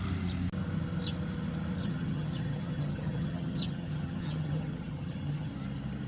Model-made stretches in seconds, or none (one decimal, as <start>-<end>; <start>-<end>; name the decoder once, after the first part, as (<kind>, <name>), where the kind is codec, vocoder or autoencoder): 1.8-5.5 (vocoder, HiFi-GAN)